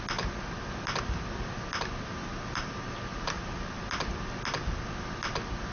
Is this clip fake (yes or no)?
no